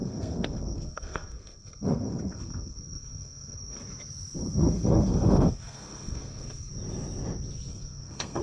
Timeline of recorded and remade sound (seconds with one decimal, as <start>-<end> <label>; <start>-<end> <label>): 0.0-3.8 remade; 3.8-4.4 recorded; 4.4-6.7 remade; 6.7-7.7 recorded; 7.7-8.4 remade